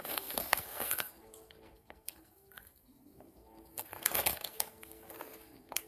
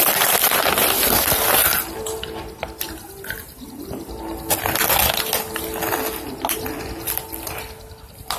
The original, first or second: second